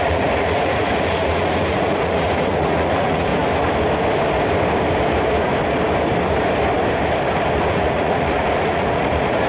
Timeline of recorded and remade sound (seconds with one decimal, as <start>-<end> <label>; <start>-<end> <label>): 0.0-3.3 remade; 3.3-7.7 recorded; 7.7-9.5 remade